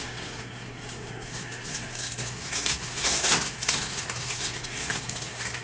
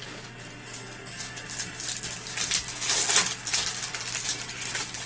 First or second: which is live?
second